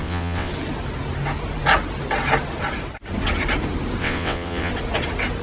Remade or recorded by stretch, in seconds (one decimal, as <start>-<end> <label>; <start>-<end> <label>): 0.0-0.5 remade; 0.5-4.0 recorded; 4.0-4.7 remade; 4.7-5.4 recorded